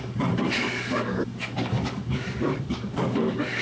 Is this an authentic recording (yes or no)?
no